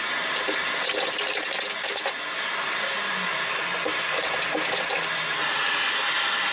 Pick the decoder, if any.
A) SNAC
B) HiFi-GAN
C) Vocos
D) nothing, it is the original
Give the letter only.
D